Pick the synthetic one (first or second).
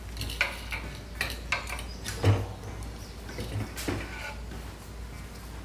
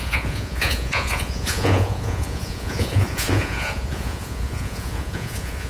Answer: second